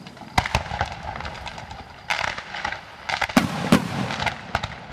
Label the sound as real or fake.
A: real